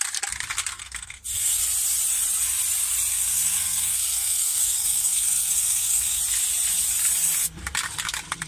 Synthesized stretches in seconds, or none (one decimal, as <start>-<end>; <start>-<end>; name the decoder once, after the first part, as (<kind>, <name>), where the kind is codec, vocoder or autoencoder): 0.8-1.6 (codec, SNAC); 3.1-6.2